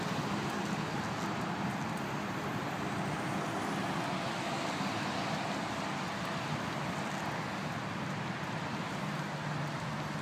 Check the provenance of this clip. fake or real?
real